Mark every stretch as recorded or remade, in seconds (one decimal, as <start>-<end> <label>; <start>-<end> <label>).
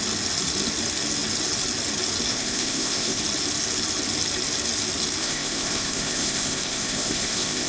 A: 0.0-2.3 recorded; 2.3-3.2 remade; 3.2-5.2 recorded; 5.2-7.7 remade